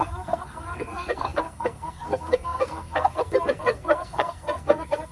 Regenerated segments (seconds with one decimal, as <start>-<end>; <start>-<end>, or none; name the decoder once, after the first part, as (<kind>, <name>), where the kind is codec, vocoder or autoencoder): 0.0-5.1 (codec, SNAC)

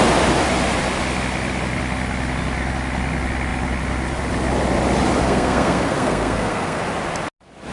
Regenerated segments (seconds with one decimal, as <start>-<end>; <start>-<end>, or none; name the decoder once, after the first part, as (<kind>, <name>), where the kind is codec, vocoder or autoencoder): 5.2-6.8 (codec, SNAC)

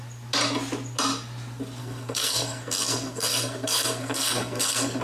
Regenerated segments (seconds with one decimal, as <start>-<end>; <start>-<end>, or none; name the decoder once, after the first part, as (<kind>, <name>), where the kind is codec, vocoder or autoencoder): 1.8-5.0 (codec, SNAC)

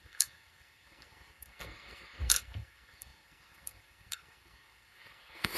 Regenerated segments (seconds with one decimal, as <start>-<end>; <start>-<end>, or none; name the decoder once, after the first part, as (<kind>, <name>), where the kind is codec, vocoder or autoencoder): 0.0-5.6 (codec, SNAC)

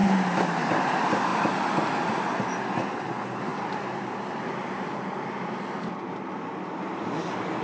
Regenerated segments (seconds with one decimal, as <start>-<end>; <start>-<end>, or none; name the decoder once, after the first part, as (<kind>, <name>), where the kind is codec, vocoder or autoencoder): none

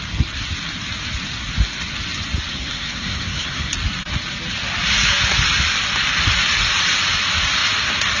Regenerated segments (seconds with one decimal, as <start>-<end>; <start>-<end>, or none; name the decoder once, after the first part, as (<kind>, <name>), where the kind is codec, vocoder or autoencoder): 2.5-3.7 (codec, SNAC)

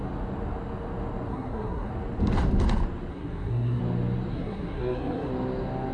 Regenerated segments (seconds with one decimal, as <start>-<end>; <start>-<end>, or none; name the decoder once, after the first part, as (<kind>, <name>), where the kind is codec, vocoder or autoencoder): 1.3-1.9 (codec, SNAC); 3.1-3.8; 4.3-5.3

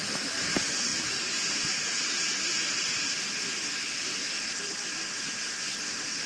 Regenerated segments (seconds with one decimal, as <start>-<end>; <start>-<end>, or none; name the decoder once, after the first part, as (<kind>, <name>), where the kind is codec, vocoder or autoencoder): none